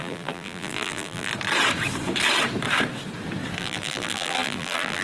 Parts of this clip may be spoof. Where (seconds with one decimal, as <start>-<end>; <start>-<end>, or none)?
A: 0.0-1.3; 3.6-5.0